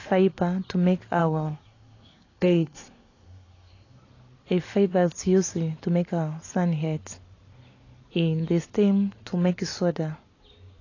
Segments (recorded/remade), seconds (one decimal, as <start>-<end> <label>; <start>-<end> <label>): 0.0-1.2 recorded; 1.2-4.0 remade; 4.0-10.8 recorded